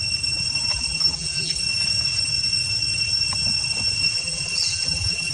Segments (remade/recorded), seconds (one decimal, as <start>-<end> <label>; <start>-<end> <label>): 0.0-0.7 recorded; 0.7-1.6 remade; 1.6-4.0 recorded; 4.0-5.3 remade

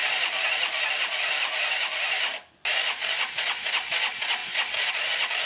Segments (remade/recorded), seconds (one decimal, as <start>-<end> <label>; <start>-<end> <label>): 0.0-0.8 remade; 0.8-5.5 recorded